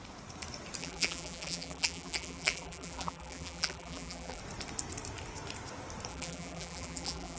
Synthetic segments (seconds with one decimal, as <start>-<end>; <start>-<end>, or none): 0.8-4.4; 6.1-7.4

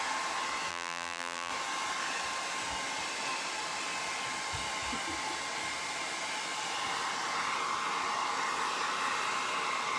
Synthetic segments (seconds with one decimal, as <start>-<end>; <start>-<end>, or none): 0.7-1.5

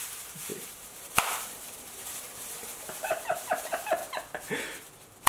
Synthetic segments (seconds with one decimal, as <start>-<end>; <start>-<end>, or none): 0.0-4.0

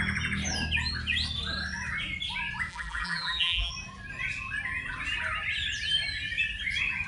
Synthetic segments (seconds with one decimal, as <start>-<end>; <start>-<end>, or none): 2.7-3.7